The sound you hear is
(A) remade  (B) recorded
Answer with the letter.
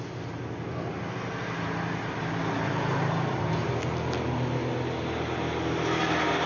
B